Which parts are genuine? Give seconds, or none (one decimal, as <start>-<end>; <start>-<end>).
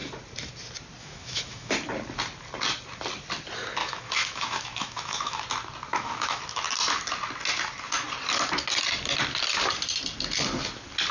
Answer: 0.0-1.0; 1.7-3.8; 5.4-5.9; 6.4-11.1